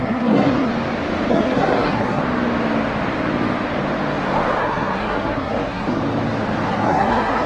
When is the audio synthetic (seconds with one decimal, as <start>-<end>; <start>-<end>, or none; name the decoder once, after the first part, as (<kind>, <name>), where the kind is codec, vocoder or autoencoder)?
0.0-0.7 (codec, SNAC); 1.3-2.2; 4.6-6.0; 6.7-7.5